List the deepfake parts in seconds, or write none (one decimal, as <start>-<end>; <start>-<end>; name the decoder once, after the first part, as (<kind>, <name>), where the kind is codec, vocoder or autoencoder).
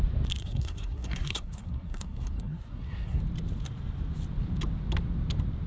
0.4-3.2 (codec, SNAC)